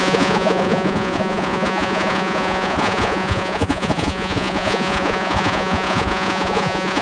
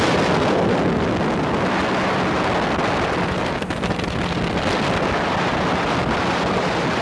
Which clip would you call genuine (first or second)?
second